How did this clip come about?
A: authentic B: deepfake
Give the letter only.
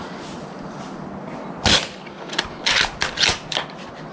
A